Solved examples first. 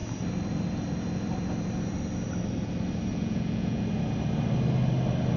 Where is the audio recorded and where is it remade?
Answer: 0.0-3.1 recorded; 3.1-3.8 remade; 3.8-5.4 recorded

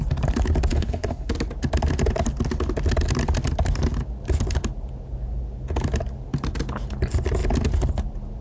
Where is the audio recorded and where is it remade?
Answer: 0.0-0.7 recorded; 0.7-1.3 remade; 1.3-8.4 recorded

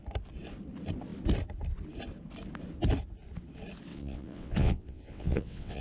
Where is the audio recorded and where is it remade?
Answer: 0.0-3.9 recorded; 3.9-5.8 remade

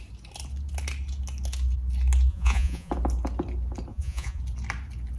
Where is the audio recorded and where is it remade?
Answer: 0.0-2.3 recorded; 2.3-2.9 remade; 2.9-3.9 recorded; 3.9-4.4 remade; 4.4-5.2 recorded

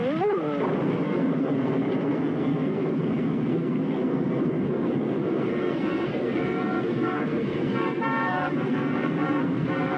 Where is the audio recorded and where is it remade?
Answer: 0.0-0.8 recorded; 0.8-10.0 remade

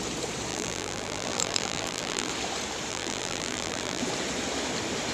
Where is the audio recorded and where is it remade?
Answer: 0.0-0.5 recorded; 0.5-2.3 remade; 2.3-2.9 recorded; 2.9-4.0 remade; 4.0-5.1 recorded